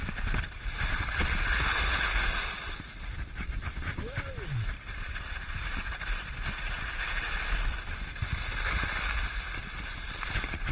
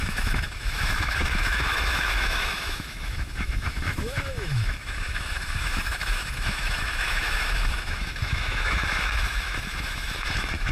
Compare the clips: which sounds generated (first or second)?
second